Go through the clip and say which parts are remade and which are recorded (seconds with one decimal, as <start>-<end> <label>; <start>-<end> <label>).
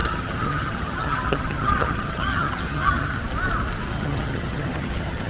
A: 0.0-3.2 remade; 3.2-3.9 recorded; 3.9-5.3 remade